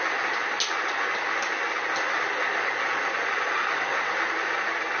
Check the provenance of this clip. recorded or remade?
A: recorded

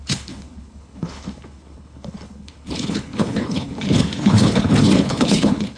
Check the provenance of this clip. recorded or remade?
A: remade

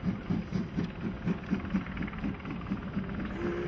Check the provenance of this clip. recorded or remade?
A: recorded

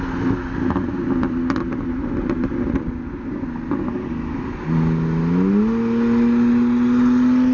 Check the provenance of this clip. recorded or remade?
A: recorded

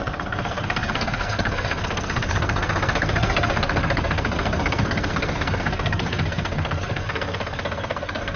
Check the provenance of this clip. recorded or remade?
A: remade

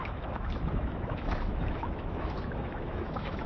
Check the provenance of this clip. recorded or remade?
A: remade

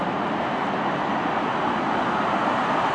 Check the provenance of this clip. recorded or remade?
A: recorded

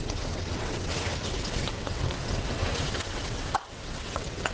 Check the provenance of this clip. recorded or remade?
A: remade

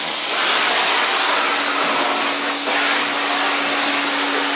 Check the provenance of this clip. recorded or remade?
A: recorded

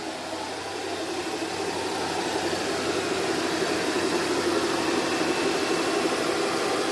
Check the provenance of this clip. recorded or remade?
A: recorded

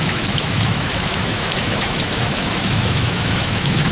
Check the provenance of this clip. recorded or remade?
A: remade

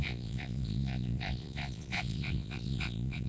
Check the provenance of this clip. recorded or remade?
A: remade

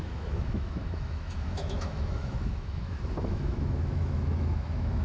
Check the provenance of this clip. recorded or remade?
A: remade